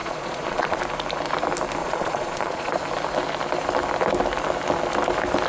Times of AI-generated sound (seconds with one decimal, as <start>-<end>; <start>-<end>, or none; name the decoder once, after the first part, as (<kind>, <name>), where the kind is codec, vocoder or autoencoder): 0.0-0.8 (vocoder, Vocos); 1.8-2.7